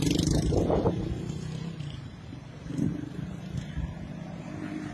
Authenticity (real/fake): fake